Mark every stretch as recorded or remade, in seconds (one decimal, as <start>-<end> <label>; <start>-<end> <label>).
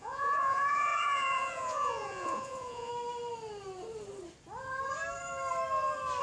0.0-2.9 remade; 2.9-6.2 recorded